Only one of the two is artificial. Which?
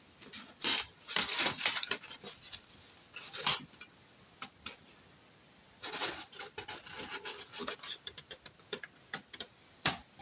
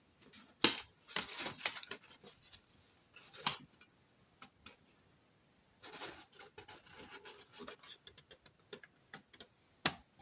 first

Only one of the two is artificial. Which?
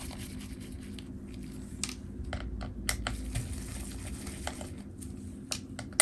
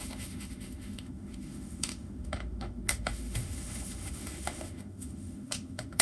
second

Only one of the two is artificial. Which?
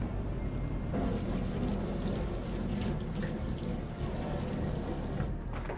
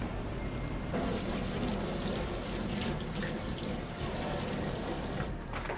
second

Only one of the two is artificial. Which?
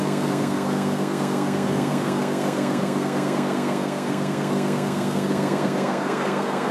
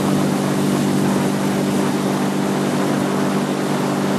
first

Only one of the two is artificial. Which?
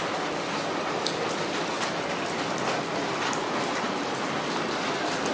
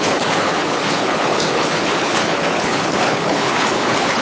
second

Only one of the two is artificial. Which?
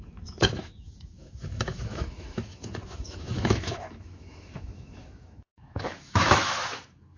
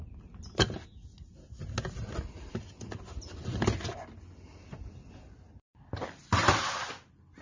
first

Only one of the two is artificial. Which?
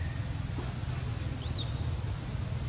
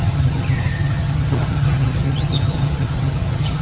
second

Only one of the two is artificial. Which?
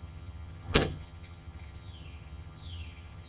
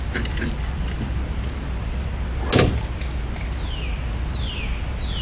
first